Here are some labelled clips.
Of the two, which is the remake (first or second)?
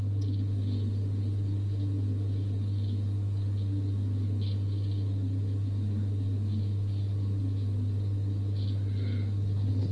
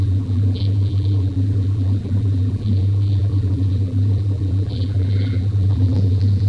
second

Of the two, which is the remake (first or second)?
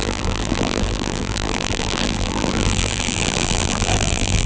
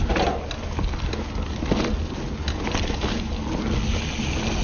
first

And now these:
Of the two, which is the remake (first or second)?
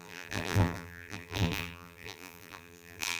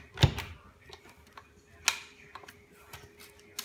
first